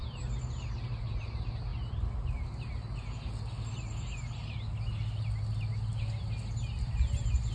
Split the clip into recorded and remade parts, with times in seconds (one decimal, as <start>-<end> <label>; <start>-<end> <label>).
0.0-7.5 recorded